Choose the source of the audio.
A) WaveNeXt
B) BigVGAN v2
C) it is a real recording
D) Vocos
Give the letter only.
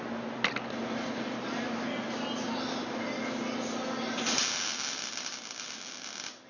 C